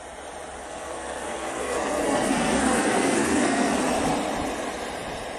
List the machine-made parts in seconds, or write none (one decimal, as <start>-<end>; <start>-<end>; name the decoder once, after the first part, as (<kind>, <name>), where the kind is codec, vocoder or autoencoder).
0.6-3.8 (codec, SNAC)